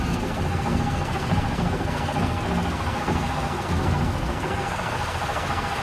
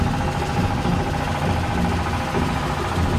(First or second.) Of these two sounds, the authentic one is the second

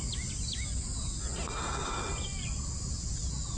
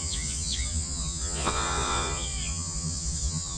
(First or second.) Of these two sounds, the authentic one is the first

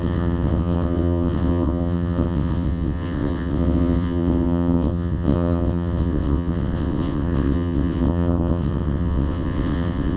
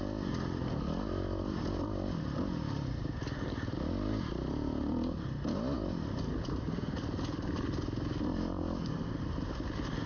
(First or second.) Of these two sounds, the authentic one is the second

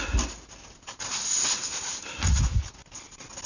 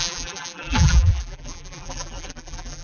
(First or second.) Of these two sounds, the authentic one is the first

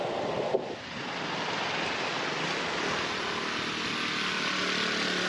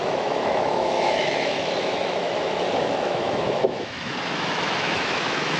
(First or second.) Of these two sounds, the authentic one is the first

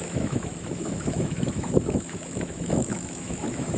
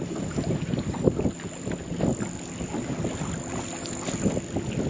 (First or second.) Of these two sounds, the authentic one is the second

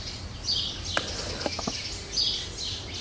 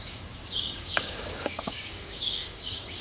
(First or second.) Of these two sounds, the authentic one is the first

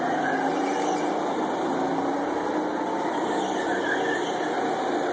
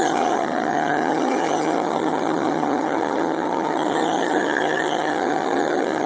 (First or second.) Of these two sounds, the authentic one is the first